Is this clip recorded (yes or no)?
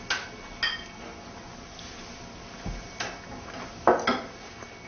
yes